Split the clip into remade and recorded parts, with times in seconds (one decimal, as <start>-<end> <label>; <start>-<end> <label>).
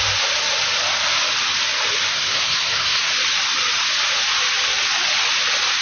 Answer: 0.0-2.1 recorded; 2.1-3.1 remade; 3.1-5.8 recorded